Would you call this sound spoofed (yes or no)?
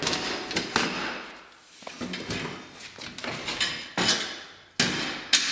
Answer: no